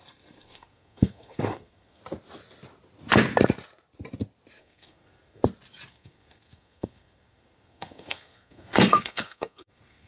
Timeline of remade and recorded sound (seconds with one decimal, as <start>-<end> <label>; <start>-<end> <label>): 0.0-2.0 remade; 2.0-4.6 recorded; 4.6-5.4 remade; 5.4-5.9 recorded; 5.9-10.1 remade